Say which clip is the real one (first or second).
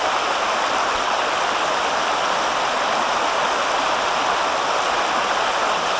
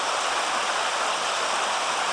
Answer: first